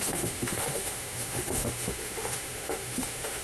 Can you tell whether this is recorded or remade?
remade